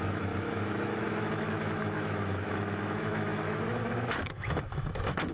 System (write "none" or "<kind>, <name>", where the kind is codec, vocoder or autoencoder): autoencoder, DAC-VAE